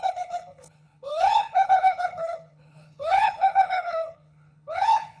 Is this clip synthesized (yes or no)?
yes